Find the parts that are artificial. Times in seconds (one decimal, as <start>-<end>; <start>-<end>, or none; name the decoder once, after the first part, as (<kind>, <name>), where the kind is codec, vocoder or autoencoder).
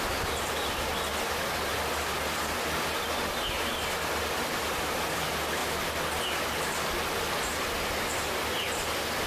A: none